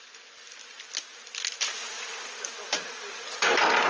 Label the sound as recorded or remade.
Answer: recorded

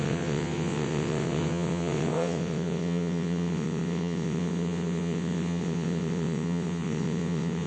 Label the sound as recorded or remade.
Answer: remade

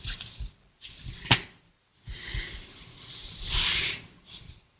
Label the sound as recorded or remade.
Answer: recorded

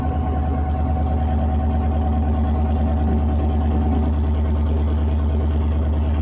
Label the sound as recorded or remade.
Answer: recorded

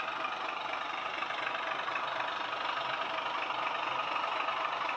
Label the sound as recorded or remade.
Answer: recorded